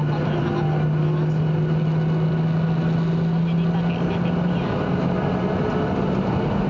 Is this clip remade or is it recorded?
recorded